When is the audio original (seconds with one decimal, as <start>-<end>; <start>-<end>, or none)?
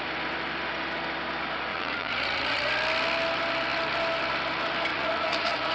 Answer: 0.0-1.7; 2.7-4.9